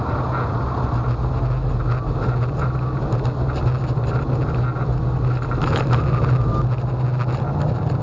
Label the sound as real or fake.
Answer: real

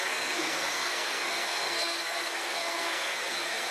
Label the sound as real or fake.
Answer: fake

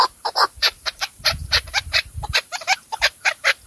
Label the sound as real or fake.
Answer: fake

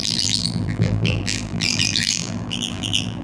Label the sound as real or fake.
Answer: fake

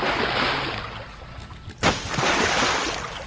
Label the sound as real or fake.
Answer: real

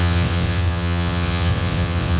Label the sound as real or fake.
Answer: fake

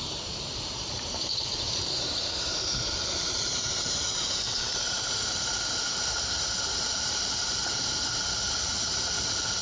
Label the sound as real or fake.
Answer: fake